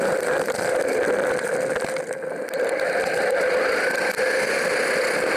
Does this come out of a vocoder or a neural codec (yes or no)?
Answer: no